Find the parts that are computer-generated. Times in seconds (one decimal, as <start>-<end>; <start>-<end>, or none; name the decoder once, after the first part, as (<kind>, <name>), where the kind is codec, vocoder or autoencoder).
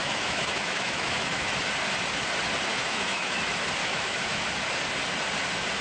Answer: 0.0-1.5 (autoencoder, DAC-VAE); 2.7-3.4; 3.8-4.5